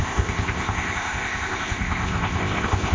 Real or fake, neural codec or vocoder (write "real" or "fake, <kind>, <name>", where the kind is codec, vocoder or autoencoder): fake, codec, ZipCodec